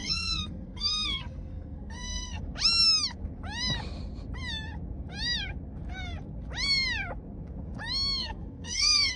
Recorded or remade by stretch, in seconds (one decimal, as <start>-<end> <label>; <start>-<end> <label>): 0.0-2.4 remade; 2.4-8.2 recorded; 8.2-9.2 remade